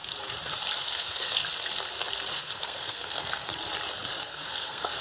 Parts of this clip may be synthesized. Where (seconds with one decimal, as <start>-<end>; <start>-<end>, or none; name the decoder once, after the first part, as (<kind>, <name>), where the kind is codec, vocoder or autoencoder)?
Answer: 0.8-1.4 (codec, SNAC); 2.3-3.5; 4.1-5.0